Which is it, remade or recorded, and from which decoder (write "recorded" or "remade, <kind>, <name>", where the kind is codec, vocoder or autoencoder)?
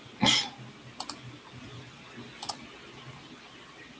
recorded